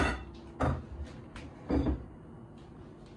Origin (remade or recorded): recorded